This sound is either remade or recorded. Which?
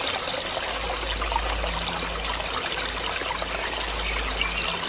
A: recorded